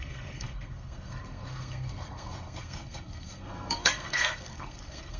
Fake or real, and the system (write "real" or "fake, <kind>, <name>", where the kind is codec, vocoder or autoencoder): fake, codec, SNAC